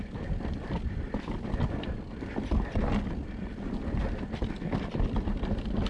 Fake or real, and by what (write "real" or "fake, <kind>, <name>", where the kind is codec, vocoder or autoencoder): real